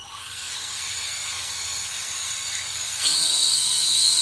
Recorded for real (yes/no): no